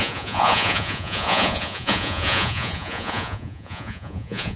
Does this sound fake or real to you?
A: fake